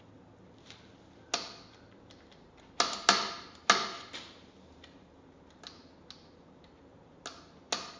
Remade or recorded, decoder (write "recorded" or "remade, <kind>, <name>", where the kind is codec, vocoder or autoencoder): recorded